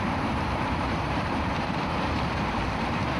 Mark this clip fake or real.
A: fake